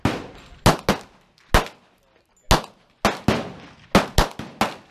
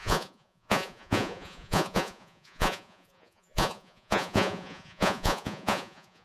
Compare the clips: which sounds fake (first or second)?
second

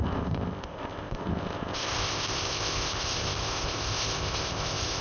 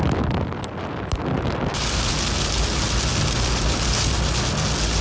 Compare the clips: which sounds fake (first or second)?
first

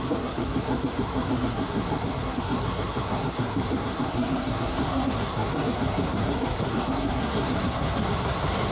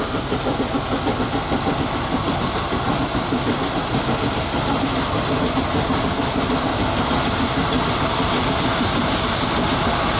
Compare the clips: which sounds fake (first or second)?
first